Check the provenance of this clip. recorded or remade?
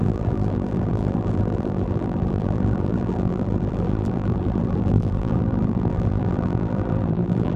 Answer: remade